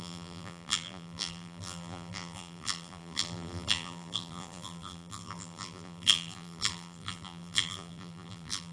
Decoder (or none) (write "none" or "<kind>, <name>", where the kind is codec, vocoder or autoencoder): vocoder, BigVGAN v2